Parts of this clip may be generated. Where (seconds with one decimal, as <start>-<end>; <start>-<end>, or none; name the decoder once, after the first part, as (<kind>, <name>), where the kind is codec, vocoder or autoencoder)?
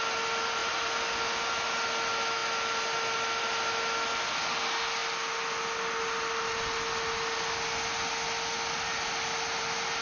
none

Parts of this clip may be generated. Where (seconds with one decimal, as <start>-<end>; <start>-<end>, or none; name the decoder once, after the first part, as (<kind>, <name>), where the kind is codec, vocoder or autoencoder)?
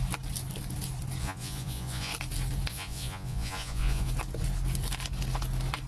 1.2-2.1 (vocoder, Vocos); 2.7-4.1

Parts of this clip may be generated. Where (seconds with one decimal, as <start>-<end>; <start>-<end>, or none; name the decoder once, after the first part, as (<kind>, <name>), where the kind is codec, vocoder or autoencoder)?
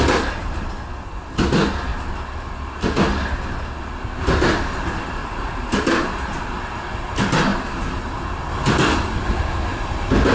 5.2-5.7 (vocoder, Vocos)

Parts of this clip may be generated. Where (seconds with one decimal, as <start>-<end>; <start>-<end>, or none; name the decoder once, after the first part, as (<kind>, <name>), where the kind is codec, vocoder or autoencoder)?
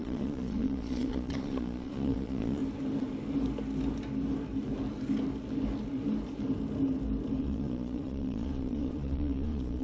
0.0-2.6 (vocoder, Vocos); 7.4-9.8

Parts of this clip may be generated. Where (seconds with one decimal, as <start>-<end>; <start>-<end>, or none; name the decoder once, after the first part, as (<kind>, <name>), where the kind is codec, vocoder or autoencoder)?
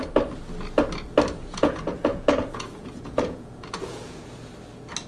1.4-4.5 (vocoder, Vocos)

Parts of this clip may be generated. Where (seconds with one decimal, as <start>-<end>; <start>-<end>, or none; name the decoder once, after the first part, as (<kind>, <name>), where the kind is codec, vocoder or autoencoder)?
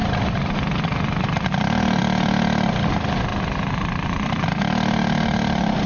none